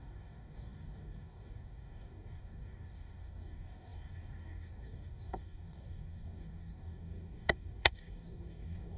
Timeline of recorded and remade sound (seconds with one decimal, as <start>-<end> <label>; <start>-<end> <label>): 0.0-9.0 remade